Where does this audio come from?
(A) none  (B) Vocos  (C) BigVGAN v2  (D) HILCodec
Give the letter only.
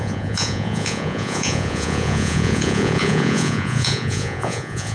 B